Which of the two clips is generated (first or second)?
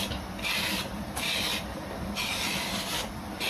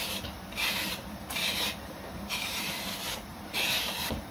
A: second